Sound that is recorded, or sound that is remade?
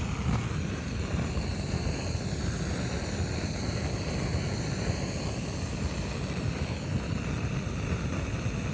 recorded